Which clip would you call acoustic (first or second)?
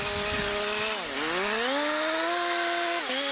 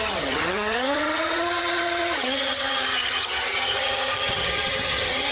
first